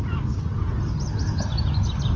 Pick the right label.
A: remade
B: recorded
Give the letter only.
B